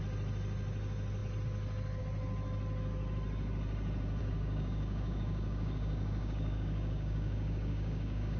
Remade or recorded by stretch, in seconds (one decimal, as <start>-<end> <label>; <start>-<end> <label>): 0.0-4.2 recorded; 4.2-8.4 remade